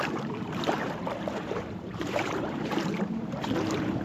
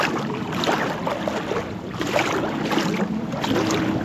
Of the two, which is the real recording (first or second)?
second